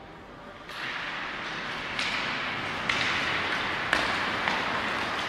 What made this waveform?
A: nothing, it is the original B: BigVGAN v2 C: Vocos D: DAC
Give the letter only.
A